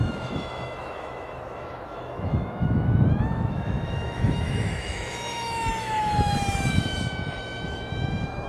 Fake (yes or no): yes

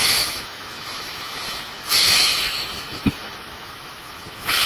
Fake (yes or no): yes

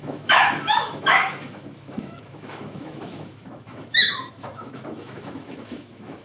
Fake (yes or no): yes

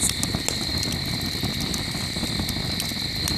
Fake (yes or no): no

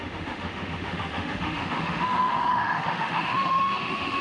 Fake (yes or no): yes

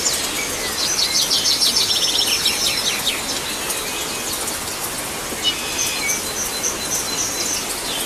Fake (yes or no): no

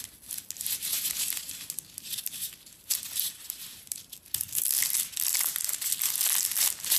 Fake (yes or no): no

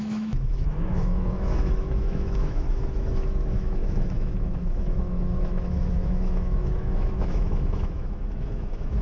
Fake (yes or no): yes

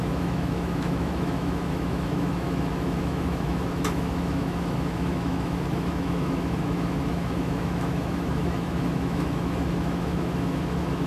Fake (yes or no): yes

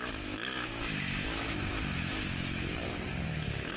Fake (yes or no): yes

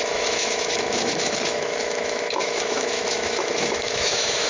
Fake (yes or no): yes